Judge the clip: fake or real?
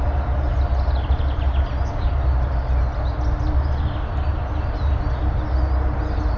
real